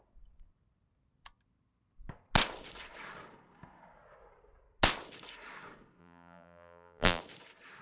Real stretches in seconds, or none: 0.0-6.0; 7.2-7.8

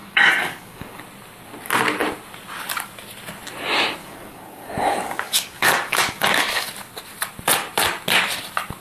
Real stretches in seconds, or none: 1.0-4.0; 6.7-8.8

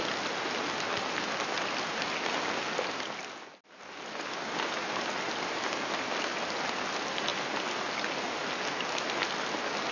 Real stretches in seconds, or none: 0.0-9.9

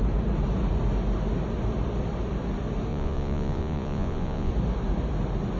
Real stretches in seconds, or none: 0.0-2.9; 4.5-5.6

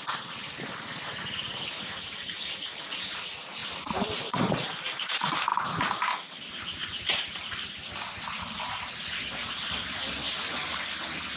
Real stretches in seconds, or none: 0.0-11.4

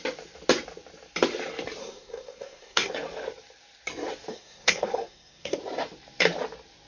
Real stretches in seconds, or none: 0.0-1.8; 2.9-4.3; 5.6-6.9